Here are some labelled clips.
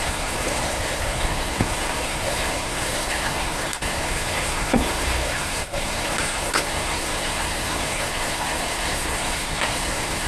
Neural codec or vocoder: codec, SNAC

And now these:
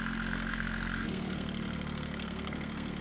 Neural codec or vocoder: codec, SNAC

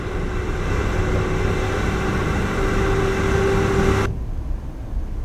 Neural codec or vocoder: none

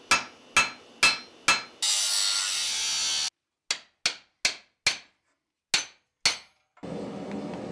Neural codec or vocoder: none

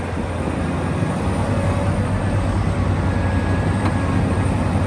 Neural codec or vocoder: none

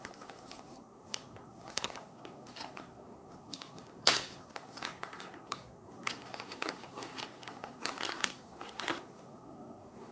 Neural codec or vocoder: codec, SNAC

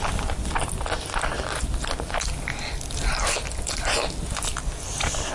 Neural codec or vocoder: none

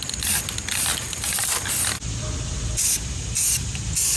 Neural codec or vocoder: none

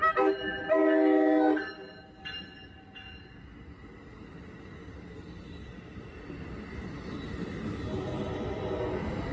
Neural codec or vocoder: none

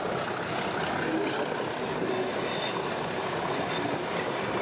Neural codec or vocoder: none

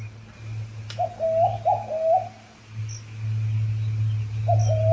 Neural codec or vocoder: none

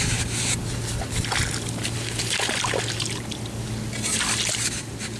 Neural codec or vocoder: none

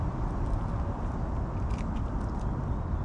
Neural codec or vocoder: none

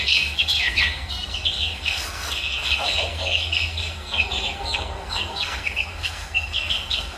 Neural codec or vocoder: codec, SNAC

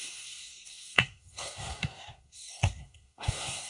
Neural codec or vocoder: codec, SNAC